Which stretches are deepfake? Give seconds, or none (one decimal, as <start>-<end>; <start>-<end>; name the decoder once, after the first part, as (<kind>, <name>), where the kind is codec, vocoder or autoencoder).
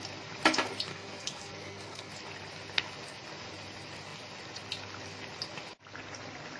0.9-2.1 (codec, SNAC)